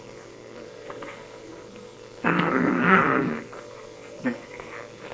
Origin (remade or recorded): remade